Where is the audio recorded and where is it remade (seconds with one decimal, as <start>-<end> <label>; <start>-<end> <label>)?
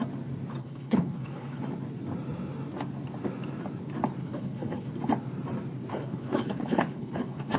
0.0-0.6 recorded; 0.6-1.6 remade; 1.6-4.2 recorded; 4.2-4.9 remade; 4.9-5.9 recorded; 5.9-7.6 remade